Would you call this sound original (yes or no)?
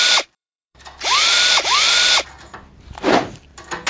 no